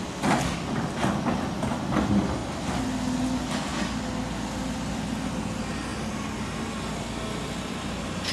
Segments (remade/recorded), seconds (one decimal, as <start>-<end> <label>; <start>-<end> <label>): 0.0-8.3 recorded